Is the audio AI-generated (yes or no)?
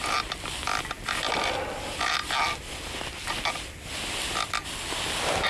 no